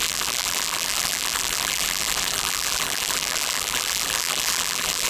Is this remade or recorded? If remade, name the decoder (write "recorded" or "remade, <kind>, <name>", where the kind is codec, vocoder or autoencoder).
remade, vocoder, BigVGAN v2